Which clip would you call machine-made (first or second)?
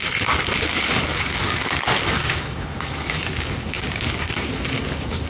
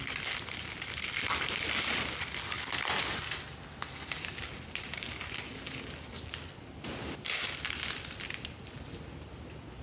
first